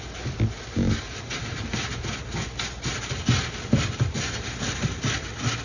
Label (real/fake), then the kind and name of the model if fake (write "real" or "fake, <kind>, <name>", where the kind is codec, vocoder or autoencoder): real